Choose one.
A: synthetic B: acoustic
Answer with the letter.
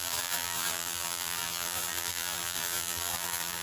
A